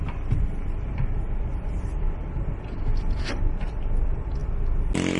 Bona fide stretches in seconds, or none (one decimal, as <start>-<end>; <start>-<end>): 0.0-1.5; 2.2-5.2